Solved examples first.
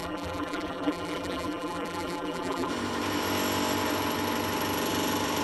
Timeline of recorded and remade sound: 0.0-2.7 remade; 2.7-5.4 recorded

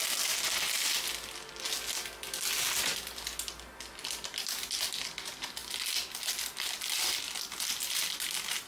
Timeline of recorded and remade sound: 0.0-8.7 recorded

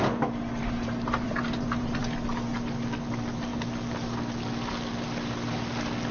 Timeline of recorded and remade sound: 0.0-0.6 recorded; 0.6-2.0 remade; 2.0-6.1 recorded

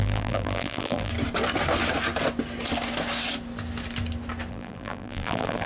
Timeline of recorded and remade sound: 0.0-1.1 remade; 1.1-4.5 recorded; 4.5-5.7 remade

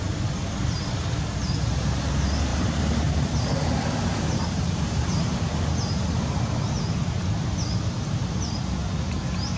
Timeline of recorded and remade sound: 0.0-2.5 recorded; 2.5-5.2 remade; 5.2-9.6 recorded